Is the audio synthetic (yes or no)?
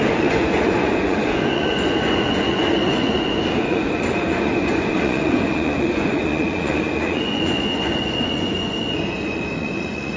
yes